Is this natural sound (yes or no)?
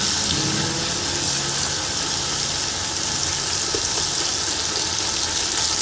yes